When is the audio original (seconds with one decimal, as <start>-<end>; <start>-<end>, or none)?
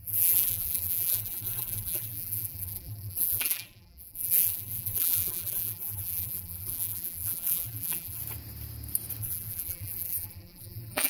8.2-9.2